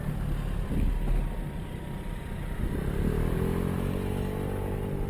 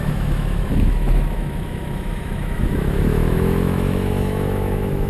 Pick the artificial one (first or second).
second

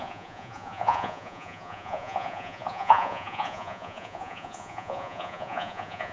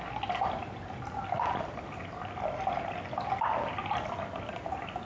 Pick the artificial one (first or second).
first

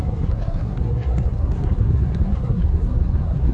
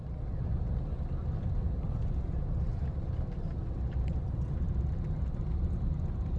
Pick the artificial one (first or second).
first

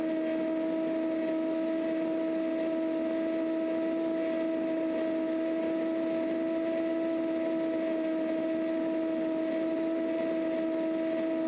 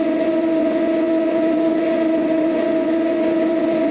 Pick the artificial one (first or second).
second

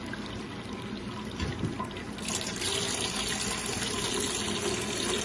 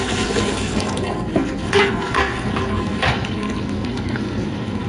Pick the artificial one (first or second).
second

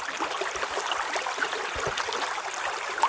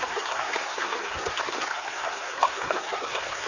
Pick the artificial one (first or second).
second